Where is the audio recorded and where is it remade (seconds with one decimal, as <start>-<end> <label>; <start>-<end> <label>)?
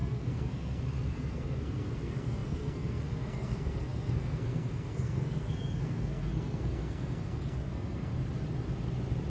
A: 0.0-8.1 remade; 8.1-9.3 recorded